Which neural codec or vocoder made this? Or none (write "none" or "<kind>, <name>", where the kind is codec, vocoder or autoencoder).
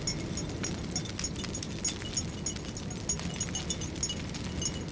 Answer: none